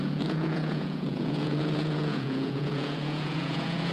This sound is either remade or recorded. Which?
remade